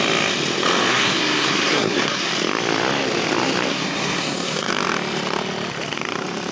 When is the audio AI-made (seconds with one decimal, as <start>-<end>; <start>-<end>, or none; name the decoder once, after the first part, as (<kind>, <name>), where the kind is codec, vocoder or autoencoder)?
0.9-2.3 (codec, SNAC); 3.7-4.7